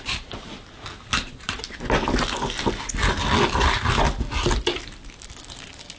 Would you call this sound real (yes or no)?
yes